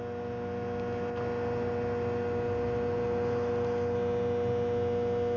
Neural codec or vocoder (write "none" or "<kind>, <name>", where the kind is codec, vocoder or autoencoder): none